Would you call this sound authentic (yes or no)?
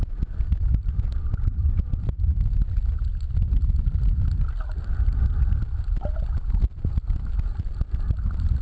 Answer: no